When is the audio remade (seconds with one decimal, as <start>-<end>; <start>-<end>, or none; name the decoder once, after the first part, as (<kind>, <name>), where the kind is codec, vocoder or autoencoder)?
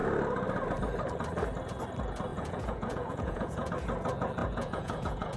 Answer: 2.3-3.7 (vocoder, Vocos); 4.4-5.4